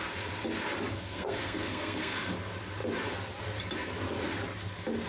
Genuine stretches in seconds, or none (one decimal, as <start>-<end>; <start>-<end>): 0.0-0.9; 2.3-5.1